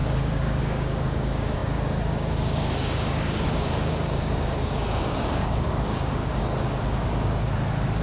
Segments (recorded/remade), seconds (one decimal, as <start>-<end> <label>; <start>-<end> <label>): 0.0-6.2 remade; 6.2-8.0 recorded